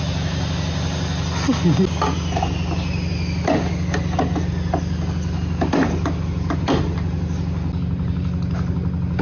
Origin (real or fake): real